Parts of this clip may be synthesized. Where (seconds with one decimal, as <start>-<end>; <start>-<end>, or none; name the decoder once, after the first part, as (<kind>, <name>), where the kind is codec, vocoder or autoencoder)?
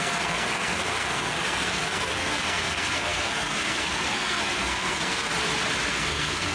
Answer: 0.0-5.3 (codec, SNAC); 5.9-6.5